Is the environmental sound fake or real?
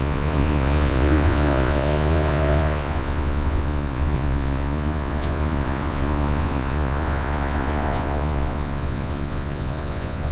fake